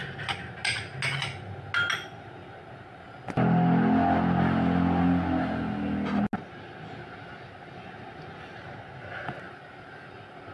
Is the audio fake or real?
real